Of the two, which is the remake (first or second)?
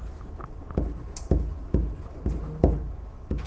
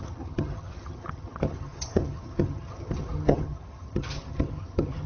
second